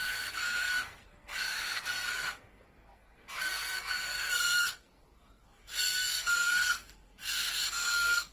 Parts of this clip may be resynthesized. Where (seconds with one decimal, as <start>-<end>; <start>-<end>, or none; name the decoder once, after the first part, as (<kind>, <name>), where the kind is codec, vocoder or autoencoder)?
0.0-8.3 (codec, SNAC)